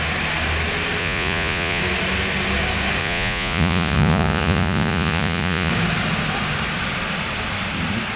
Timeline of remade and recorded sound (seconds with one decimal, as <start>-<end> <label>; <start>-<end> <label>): 0.0-1.0 recorded; 1.0-1.8 remade; 1.8-3.0 recorded; 3.0-5.7 remade; 5.7-8.2 recorded